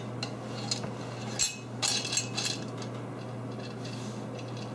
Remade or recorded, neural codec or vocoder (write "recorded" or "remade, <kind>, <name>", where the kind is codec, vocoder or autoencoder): recorded